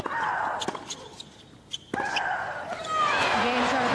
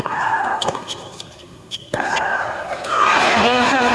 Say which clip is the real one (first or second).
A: first